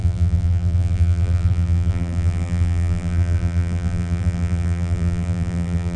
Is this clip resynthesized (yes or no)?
yes